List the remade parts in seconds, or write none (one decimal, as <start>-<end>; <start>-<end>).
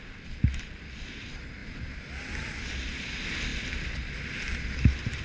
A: 3.5-5.2